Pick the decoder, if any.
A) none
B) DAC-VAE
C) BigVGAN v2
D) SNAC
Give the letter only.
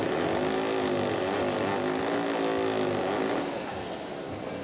A